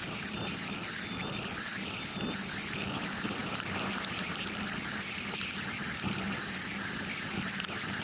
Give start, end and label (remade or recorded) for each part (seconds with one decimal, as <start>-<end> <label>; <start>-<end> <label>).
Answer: 0.0-3.4 recorded; 3.4-4.4 remade; 4.4-8.0 recorded